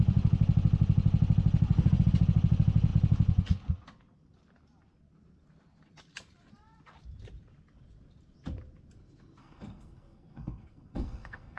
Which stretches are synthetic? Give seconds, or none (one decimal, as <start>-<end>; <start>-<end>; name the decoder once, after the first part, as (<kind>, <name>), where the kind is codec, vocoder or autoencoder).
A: 9.4-11.6 (codec, SNAC)